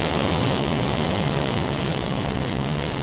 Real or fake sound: fake